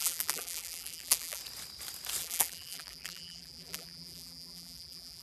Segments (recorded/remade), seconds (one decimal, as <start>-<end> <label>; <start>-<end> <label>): 0.0-1.4 remade; 1.4-2.2 recorded; 2.2-5.2 remade

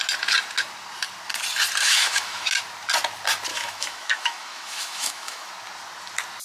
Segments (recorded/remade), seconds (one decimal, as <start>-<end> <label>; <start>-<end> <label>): 0.0-1.8 recorded; 1.8-2.5 remade; 2.5-3.5 recorded; 3.5-5.5 remade; 5.5-6.4 recorded

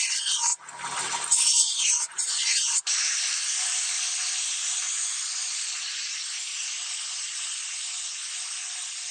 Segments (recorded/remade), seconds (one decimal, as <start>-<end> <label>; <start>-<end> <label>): 0.0-0.5 recorded; 0.5-1.0 remade; 1.0-1.5 recorded; 1.5-4.9 remade; 4.9-9.1 recorded

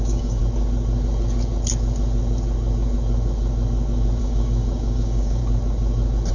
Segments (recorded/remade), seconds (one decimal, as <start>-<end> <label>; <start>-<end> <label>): 0.0-0.4 remade; 0.4-4.2 recorded; 4.2-5.4 remade; 5.4-6.3 recorded